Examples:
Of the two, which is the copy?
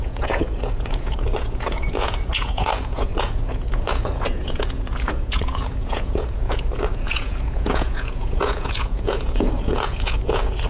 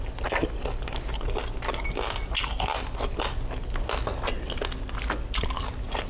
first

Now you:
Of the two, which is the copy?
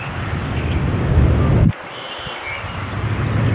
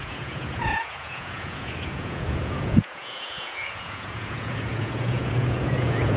second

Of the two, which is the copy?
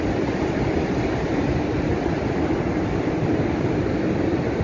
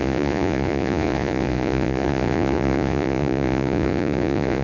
second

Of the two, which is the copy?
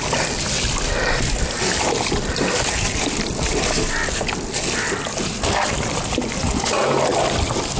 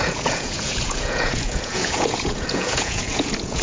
second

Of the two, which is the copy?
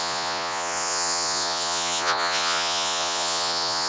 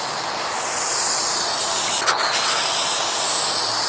first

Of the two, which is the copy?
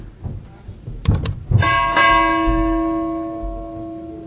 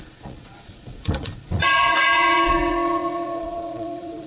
second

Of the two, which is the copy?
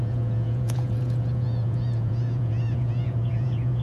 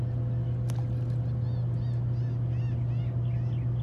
first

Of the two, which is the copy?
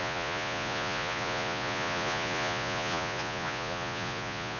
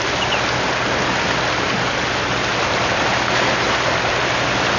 first